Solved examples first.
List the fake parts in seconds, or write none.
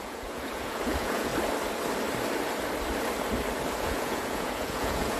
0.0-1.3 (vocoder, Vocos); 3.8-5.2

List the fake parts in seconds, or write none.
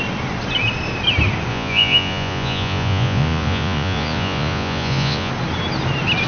1.5-5.3 (vocoder, Vocos)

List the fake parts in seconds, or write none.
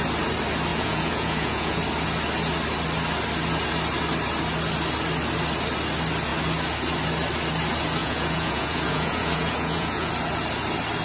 0.7-1.8 (vocoder, Vocos); 8.0-10.1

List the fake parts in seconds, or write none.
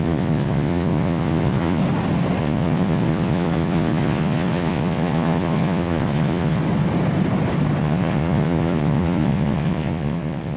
0.0-1.8 (vocoder, Vocos); 2.4-6.6; 7.8-10.6